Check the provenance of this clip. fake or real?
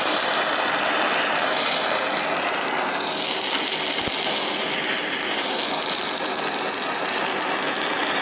real